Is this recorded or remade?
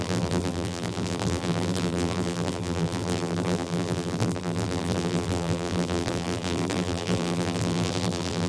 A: remade